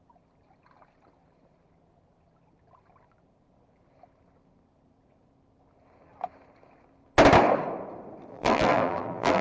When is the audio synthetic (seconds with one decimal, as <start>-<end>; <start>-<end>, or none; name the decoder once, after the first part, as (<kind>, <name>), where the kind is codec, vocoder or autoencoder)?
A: 8.3-9.4 (vocoder, BigVGAN v2)